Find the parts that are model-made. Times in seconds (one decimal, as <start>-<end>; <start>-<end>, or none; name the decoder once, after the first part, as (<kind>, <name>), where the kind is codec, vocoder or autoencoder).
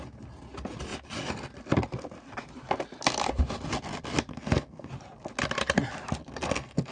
4.3-4.9 (codec, SNAC); 6.2-6.9